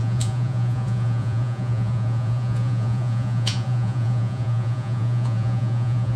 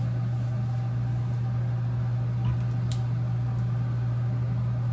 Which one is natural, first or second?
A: second